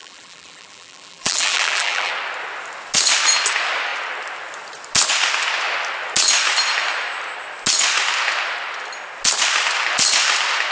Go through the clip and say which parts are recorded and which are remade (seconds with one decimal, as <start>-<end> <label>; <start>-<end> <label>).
0.0-2.1 remade; 2.1-10.7 recorded